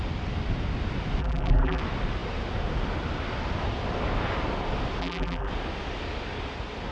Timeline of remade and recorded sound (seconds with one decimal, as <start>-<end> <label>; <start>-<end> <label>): 0.0-1.2 recorded; 1.2-1.8 remade; 1.8-5.0 recorded; 5.0-5.5 remade; 5.5-6.9 recorded